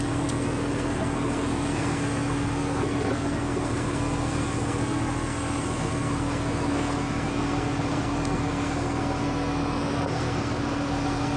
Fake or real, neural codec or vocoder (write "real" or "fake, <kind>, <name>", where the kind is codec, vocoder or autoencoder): fake, codec, SNAC